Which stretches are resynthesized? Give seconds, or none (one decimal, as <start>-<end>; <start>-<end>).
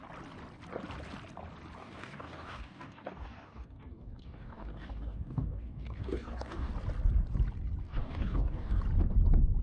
1.8-6.7; 7.8-8.8